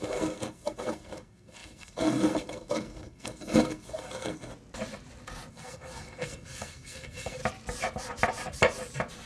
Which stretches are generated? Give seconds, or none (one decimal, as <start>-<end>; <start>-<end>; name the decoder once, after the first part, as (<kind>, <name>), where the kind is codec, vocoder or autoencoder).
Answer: 0.0-4.5 (codec, SNAC); 5.5-7.4